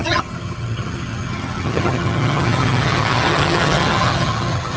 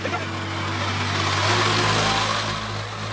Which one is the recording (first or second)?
second